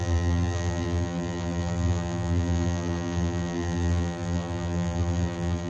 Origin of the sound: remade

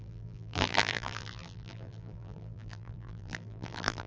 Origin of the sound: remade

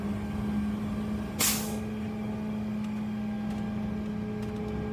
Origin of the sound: recorded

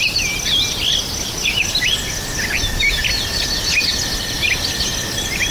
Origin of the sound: recorded